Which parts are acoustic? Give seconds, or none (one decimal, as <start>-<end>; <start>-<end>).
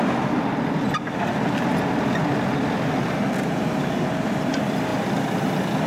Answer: 0.0-5.9